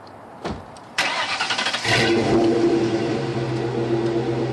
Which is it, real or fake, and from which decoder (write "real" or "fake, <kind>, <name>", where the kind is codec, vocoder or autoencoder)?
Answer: real